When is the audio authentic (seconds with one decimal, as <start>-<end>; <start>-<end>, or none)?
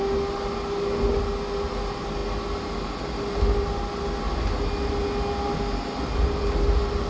0.0-7.1